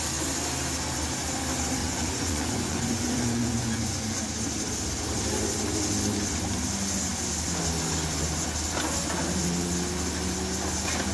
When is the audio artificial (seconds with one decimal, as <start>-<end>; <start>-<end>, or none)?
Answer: 1.8-4.2